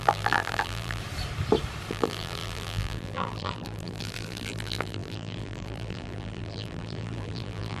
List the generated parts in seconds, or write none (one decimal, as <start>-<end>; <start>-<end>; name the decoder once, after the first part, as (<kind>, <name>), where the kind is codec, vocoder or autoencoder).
0.0-1.0 (vocoder, BigVGAN v2); 1.9-7.8